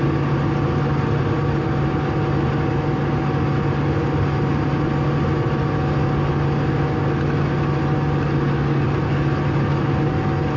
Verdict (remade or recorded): recorded